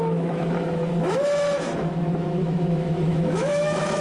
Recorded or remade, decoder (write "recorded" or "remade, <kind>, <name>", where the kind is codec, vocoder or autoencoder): remade, autoencoder, DAC-VAE